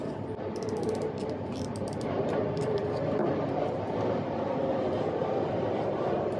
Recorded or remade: remade